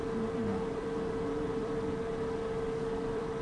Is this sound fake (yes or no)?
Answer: yes